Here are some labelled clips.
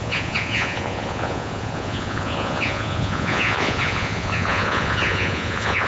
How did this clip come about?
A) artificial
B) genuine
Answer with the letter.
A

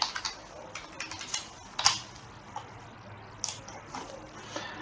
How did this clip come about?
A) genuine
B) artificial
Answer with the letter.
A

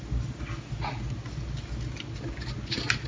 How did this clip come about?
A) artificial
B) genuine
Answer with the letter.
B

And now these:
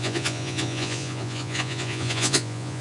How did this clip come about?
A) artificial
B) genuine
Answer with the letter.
A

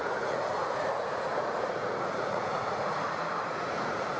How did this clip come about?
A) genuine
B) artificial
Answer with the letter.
B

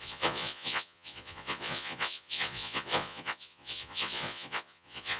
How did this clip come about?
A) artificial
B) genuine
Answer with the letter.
A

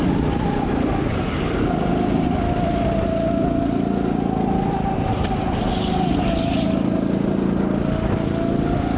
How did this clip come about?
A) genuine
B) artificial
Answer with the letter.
A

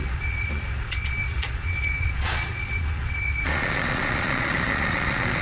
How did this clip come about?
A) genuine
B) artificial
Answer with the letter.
B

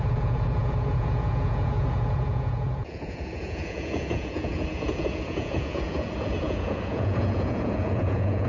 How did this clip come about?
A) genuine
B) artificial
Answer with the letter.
B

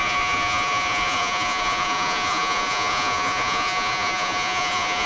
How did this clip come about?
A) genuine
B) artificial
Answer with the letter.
B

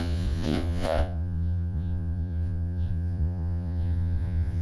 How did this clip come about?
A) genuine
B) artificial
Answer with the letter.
B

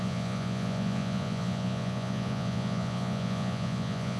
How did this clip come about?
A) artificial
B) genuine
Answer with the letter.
A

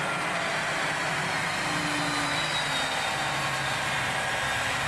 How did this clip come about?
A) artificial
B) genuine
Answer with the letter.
B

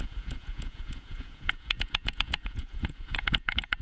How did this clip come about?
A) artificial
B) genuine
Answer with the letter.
A